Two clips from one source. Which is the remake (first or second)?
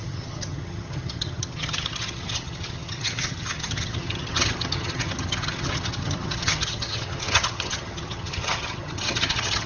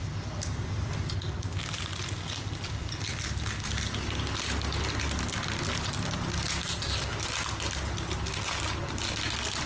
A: first